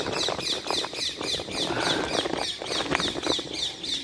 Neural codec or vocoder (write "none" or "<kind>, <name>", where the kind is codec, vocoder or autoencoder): none